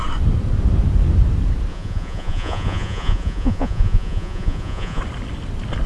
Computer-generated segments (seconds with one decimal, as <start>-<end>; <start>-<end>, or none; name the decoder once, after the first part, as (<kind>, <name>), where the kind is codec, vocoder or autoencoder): 1.7-5.0 (vocoder, Vocos)